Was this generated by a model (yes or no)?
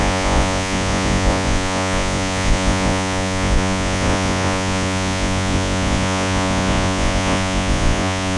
yes